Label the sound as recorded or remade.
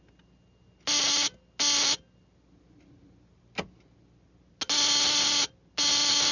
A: recorded